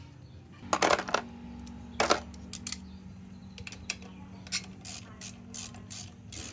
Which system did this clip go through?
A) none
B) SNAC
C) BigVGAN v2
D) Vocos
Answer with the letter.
A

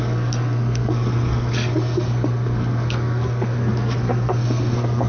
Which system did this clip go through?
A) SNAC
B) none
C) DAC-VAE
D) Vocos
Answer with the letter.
A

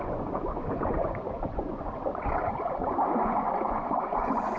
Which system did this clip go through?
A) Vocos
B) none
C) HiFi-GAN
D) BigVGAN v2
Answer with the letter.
A